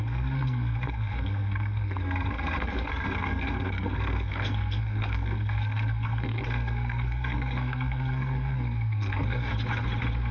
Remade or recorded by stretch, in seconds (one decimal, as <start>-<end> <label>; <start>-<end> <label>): 0.0-9.5 remade; 9.5-10.3 recorded